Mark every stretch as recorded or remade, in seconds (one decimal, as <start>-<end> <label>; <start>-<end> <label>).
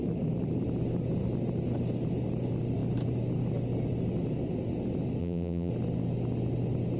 0.0-5.2 recorded; 5.2-5.7 remade; 5.7-7.0 recorded